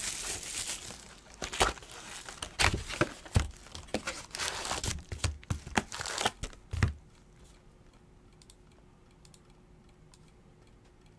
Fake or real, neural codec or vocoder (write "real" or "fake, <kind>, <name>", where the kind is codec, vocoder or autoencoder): real